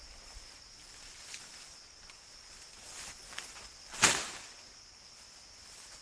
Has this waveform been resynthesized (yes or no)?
no